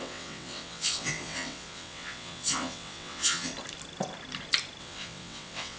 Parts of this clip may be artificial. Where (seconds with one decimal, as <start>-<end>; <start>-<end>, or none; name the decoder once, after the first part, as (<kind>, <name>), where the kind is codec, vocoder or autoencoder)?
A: 0.0-3.5 (vocoder, WaveNeXt); 4.8-5.8

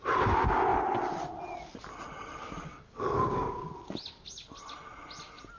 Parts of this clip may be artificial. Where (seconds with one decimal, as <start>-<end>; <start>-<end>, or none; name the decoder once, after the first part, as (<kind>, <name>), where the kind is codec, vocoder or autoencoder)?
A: 2.7-3.7 (codec, DAC)

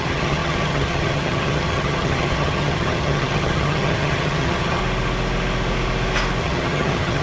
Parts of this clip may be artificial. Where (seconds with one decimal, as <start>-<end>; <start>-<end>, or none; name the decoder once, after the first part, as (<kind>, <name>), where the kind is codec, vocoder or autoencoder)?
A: 0.0-4.8 (vocoder, HiFi-GAN); 6.4-7.2

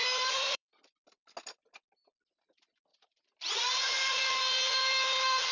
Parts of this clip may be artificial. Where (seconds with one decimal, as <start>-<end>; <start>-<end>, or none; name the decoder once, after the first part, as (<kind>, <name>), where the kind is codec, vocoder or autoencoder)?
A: 0.0-0.7 (vocoder, BigVGAN v2); 2.9-4.4

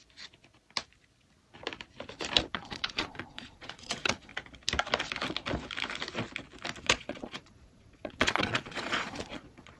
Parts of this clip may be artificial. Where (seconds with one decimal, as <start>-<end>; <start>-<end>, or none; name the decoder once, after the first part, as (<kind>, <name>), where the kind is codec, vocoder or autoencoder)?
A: 2.5-4.3 (vocoder, Vocos); 6.8-9.8

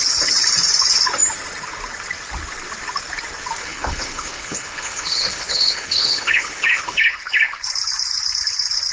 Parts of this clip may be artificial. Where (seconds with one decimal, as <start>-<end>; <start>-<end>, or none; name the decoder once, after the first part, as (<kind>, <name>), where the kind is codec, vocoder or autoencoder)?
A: 3.6-7.6 (codec, HILCodec)

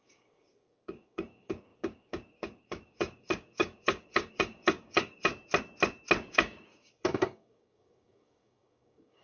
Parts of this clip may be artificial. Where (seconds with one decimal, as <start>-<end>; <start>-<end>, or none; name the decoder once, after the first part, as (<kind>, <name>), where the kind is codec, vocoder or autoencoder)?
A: 0.0-5.3 (codec, DAC); 6.2-9.2